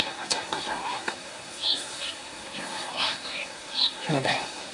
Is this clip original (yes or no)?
no